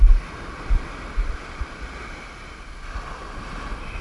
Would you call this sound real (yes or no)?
yes